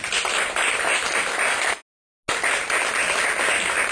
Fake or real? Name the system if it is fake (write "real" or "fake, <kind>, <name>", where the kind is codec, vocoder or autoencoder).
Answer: real